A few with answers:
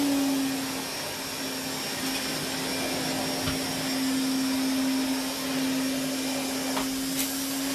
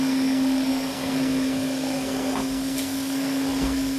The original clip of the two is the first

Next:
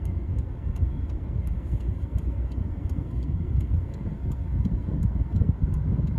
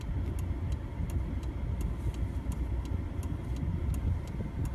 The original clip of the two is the second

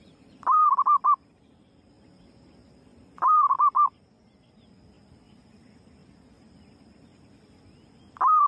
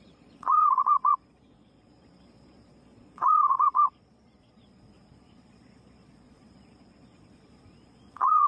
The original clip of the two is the first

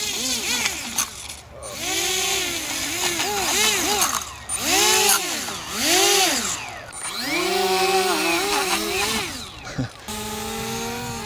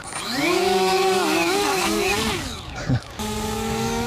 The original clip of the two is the first